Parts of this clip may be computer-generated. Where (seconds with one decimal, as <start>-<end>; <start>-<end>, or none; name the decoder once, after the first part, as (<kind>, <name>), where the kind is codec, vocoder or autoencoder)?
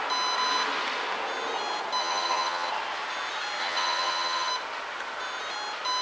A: 2.0-2.7 (vocoder, HiFi-GAN); 3.6-4.5